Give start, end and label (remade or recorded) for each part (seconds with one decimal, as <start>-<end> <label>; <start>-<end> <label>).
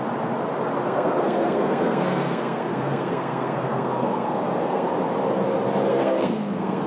0.0-0.8 recorded; 0.8-4.9 remade; 4.9-5.9 recorded; 5.9-6.9 remade